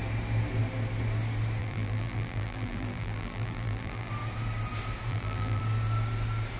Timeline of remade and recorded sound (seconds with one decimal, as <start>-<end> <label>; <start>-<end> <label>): 0.0-1.6 recorded; 1.6-4.1 remade; 4.1-5.1 recorded; 5.1-5.6 remade; 5.6-6.6 recorded